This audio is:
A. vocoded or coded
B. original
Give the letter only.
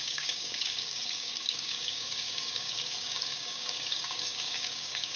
A